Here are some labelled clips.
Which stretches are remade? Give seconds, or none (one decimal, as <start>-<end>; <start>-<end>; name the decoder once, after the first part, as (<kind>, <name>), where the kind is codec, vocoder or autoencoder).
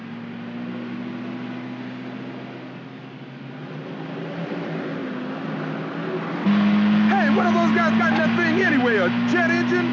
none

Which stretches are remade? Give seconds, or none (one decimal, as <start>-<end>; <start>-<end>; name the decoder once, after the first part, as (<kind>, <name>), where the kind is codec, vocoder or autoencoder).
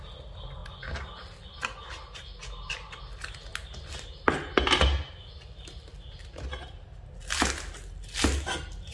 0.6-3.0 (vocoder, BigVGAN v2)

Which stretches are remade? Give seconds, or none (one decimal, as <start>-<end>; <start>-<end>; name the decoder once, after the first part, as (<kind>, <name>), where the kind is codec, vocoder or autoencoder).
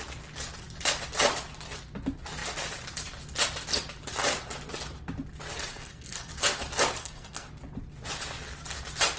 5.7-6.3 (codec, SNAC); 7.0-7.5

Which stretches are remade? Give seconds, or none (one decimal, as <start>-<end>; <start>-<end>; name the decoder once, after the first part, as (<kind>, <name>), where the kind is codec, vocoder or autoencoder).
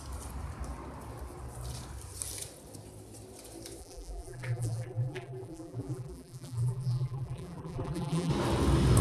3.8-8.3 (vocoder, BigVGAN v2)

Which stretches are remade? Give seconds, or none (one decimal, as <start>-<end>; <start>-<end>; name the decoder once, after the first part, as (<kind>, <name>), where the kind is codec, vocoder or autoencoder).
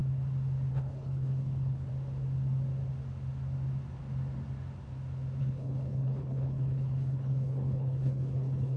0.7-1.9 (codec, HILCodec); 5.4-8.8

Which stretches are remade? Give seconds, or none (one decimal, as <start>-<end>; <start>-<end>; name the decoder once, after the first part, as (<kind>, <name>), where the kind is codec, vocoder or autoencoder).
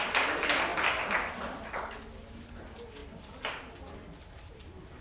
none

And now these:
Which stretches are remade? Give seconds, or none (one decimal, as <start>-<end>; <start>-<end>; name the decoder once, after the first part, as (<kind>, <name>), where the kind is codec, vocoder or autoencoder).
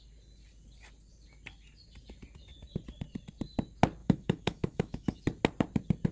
4.0-5.2 (autoencoder, DAC-VAE)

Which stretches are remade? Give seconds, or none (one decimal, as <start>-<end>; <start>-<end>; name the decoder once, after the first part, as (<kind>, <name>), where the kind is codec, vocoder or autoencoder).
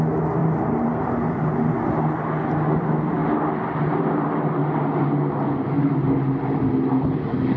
0.4-1.7 (vocoder, BigVGAN v2)